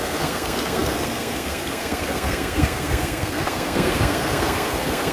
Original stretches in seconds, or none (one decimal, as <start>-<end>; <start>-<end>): none